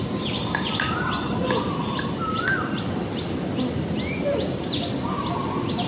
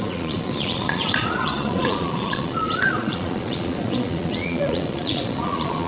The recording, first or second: first